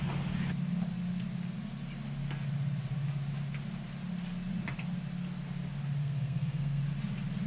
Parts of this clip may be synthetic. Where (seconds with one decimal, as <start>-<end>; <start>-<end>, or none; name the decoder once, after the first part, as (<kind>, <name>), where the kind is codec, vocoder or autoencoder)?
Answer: 6.0-6.8 (codec, SNAC)